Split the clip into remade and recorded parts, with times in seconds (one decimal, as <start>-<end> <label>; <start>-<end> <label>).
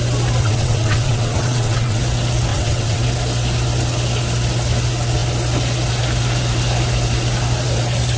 0.0-0.4 recorded; 0.4-2.0 remade; 2.0-2.5 recorded; 2.5-3.0 remade; 3.0-8.2 recorded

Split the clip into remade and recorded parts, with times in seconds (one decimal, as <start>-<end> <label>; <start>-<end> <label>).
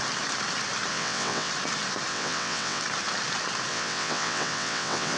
0.0-0.9 recorded; 0.9-1.5 remade; 1.5-2.1 recorded; 2.1-2.8 remade; 2.8-3.7 recorded; 3.7-5.2 remade